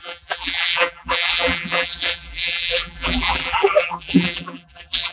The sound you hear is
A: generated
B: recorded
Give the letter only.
A